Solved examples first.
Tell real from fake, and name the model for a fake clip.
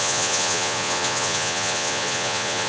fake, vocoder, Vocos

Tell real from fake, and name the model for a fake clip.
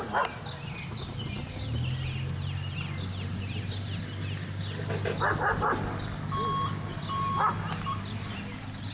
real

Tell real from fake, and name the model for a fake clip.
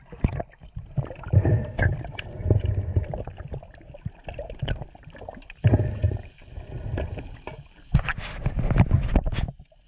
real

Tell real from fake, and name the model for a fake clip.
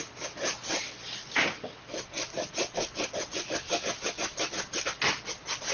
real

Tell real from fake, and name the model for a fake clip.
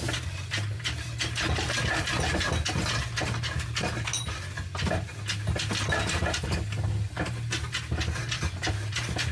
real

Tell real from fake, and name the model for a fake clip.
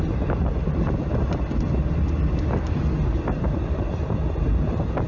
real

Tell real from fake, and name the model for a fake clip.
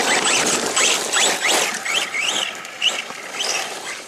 real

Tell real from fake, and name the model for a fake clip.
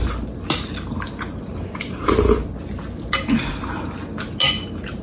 real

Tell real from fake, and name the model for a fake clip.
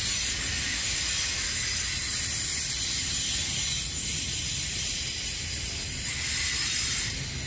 real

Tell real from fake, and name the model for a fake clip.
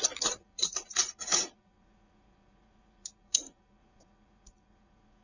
fake, vocoder, Vocos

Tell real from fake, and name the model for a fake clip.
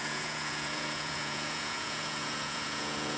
fake, vocoder, Vocos